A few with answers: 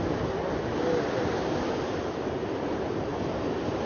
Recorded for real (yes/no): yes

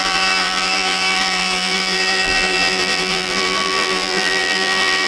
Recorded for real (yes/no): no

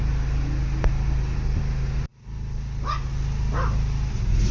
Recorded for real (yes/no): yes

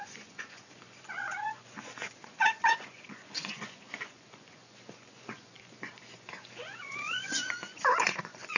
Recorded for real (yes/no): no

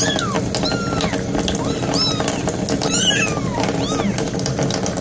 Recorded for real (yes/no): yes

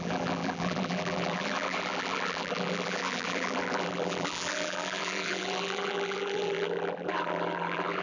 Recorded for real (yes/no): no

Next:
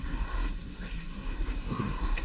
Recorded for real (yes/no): no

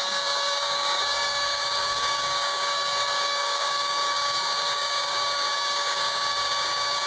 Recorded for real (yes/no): no